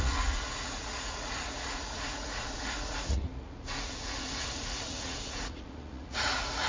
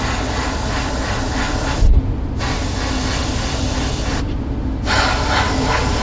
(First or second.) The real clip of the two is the second